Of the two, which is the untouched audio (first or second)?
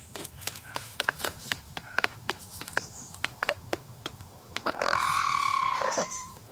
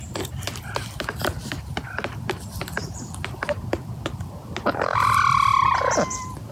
second